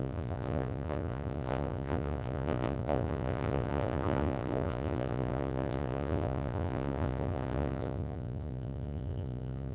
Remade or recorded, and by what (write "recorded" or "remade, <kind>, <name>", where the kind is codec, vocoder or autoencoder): remade, vocoder, Vocos